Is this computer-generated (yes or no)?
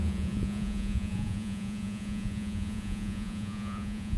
yes